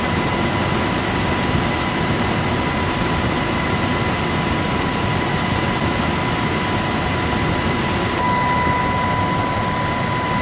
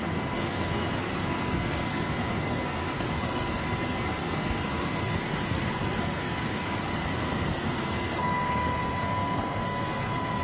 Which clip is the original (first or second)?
first